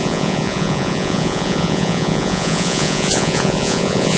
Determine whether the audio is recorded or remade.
remade